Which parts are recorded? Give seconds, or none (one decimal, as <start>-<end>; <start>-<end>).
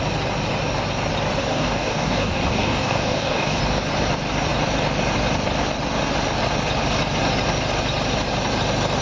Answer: 0.0-1.4; 3.6-9.0